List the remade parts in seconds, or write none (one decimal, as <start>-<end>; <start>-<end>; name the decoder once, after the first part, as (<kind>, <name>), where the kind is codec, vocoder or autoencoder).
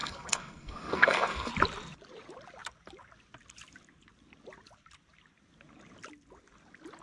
0.0-1.5 (codec, SNAC)